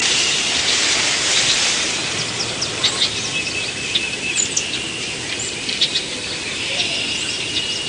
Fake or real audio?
real